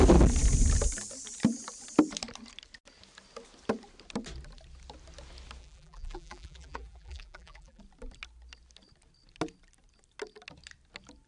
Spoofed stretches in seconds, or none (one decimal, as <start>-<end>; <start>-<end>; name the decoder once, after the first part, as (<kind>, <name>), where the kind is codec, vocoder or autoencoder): 5.6-7.8 (vocoder, BigVGAN v2)